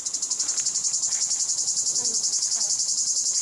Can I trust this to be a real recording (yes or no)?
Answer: no